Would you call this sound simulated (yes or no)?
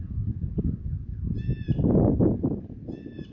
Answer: no